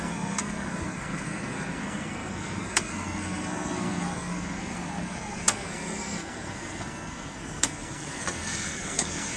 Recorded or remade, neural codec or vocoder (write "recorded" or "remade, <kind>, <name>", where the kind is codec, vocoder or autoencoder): remade, codec, SNAC